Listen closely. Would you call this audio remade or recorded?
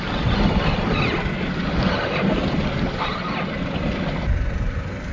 recorded